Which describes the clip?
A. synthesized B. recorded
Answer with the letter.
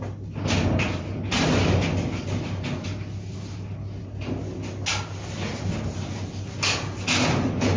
B